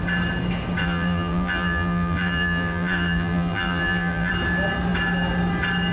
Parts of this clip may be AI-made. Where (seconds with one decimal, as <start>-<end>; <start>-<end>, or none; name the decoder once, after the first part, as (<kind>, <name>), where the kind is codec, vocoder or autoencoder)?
0.8-4.3 (vocoder, BigVGAN v2)